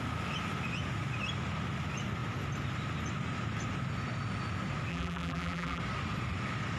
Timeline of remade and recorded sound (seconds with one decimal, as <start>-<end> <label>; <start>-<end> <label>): 0.0-4.9 recorded; 4.9-5.8 remade; 5.8-6.8 recorded